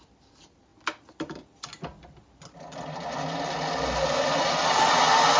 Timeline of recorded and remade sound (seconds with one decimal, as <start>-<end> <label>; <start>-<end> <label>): 0.0-5.4 recorded